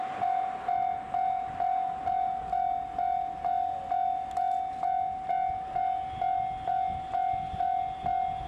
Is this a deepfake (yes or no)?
no